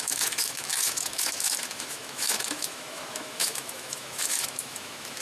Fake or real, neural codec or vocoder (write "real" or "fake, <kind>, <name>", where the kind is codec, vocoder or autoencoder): fake, autoencoder, DAC-VAE